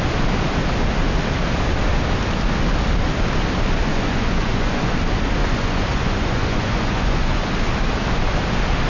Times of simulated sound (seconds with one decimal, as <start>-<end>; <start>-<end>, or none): 3.9-4.9; 5.4-7.5